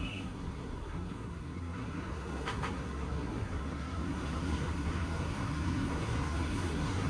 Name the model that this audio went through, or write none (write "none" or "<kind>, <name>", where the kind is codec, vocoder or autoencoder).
codec, SNAC